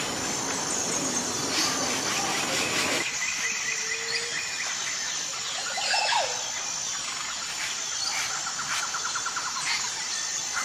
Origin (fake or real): real